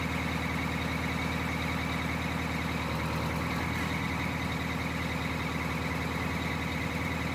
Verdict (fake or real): real